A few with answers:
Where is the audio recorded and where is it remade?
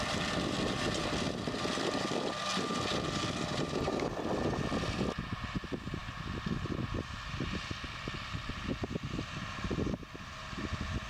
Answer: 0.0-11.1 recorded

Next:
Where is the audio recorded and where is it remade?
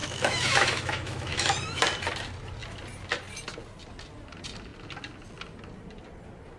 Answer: 0.0-1.8 remade; 1.8-6.6 recorded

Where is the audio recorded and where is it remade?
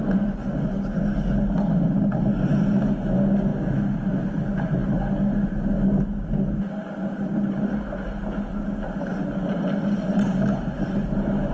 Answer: 0.0-3.5 recorded; 3.5-4.3 remade; 4.3-11.5 recorded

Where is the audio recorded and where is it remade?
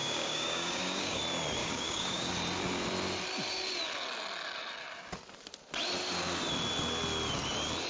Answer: 0.0-1.2 remade; 1.2-1.6 recorded; 1.6-2.3 remade; 2.3-7.9 recorded